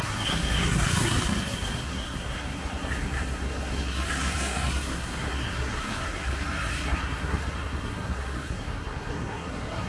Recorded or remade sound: remade